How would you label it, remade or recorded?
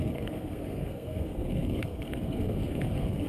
remade